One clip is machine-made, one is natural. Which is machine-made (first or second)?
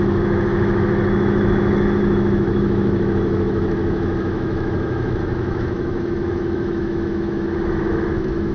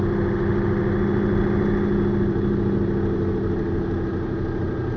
first